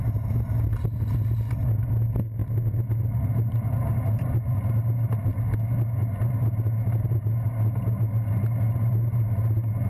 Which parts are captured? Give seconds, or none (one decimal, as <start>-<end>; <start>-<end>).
0.0-9.9